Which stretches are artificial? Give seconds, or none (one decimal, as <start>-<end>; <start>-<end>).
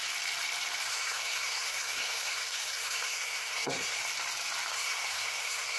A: 0.9-4.0; 4.7-5.8